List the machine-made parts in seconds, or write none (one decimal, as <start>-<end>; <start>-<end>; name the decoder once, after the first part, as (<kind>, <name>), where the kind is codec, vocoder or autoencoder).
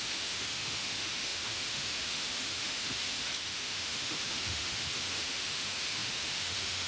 0.0-6.9 (autoencoder, DAC-VAE)